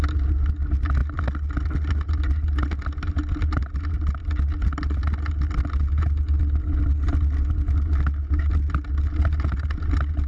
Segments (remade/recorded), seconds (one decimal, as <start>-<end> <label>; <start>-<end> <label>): 0.0-10.3 recorded